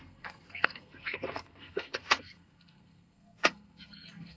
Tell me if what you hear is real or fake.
fake